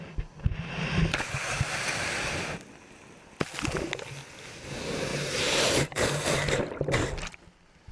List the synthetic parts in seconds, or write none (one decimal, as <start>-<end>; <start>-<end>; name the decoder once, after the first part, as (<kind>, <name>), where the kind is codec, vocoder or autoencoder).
5.1-6.9 (vocoder, BigVGAN v2)